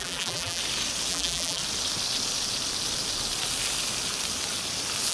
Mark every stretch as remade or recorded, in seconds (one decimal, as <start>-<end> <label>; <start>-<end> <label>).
0.0-0.6 remade; 0.6-1.1 recorded; 1.1-1.6 remade; 1.6-5.1 recorded

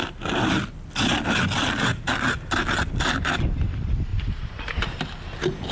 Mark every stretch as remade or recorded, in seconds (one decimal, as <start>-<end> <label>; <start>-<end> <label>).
0.0-4.1 recorded; 4.1-5.0 remade; 5.0-5.7 recorded

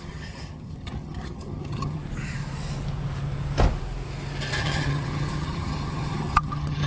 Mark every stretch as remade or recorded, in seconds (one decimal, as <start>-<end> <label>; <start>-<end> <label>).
0.0-2.0 remade; 2.0-4.6 recorded; 4.6-6.9 remade

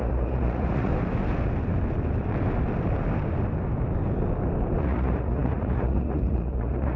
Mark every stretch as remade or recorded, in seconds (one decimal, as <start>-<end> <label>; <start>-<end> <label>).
0.0-0.9 remade; 0.9-4.8 recorded; 4.8-7.0 remade